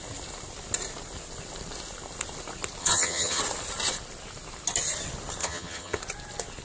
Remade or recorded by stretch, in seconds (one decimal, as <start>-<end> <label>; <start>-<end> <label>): 0.0-2.8 recorded; 2.8-3.4 remade; 3.4-5.4 recorded; 5.4-6.0 remade; 6.0-6.6 recorded